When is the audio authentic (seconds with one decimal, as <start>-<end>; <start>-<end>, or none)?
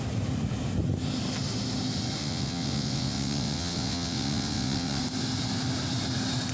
0.0-2.2; 5.0-6.5